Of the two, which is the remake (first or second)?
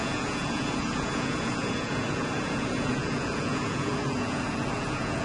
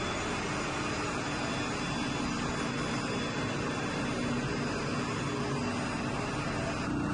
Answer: first